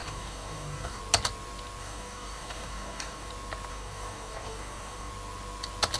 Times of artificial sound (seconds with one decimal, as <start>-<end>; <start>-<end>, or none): 0.0-1.0; 1.8-3.3; 3.7-5.1